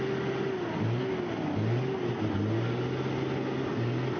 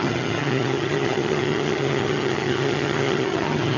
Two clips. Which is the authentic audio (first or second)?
first